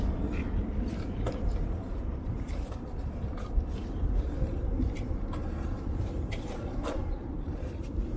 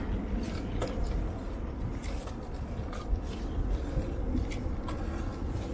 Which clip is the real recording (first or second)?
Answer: second